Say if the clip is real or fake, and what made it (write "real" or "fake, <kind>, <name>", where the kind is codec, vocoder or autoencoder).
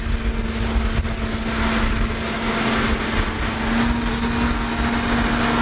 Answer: real